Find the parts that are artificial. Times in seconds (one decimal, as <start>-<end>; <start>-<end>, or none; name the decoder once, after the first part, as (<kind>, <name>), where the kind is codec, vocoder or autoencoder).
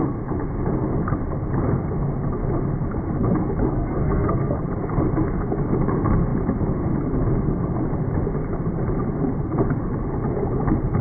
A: 3.6-4.6 (codec, SNAC)